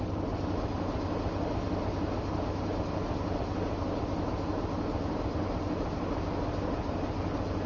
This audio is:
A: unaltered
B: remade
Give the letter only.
A